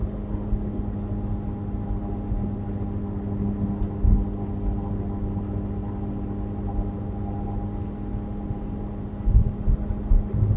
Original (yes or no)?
yes